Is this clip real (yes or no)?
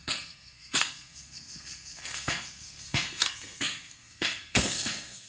no